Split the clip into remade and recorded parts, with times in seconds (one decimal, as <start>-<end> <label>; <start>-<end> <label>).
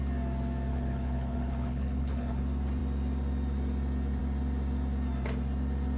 0.0-0.7 recorded; 0.7-2.4 remade; 2.4-6.0 recorded